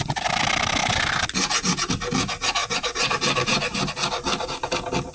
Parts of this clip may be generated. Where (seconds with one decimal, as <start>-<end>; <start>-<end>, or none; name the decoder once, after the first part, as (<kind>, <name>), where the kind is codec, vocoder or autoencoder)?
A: 0.8-1.9 (vocoder, BigVGAN v2); 2.6-3.9